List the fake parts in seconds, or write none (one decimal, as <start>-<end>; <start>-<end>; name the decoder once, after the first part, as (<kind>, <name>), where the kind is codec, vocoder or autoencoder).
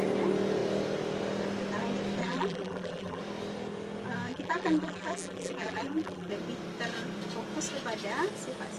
2.2-3.2 (vocoder, BigVGAN v2); 4.3-6.3